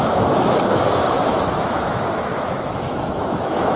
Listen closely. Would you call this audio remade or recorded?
remade